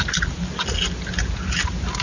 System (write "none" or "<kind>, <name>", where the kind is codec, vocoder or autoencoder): none